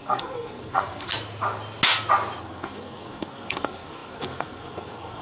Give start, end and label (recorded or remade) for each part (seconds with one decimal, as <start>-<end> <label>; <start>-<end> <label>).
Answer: 0.0-1.1 remade; 1.1-2.4 recorded; 2.4-5.2 remade